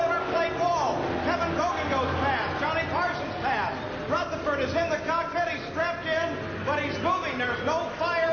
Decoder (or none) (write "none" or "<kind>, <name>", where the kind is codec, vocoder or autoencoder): none